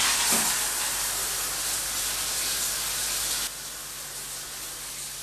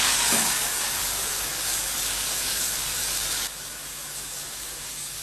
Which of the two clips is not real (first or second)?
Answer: second